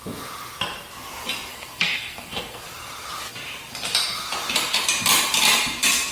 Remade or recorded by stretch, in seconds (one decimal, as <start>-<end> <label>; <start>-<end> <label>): 0.0-1.5 recorded; 1.5-2.6 remade; 2.6-6.1 recorded